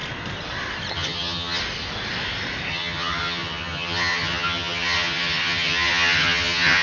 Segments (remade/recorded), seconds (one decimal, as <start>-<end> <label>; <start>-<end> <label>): 0.0-0.9 recorded; 0.9-1.6 remade; 1.6-2.7 recorded; 2.7-6.8 remade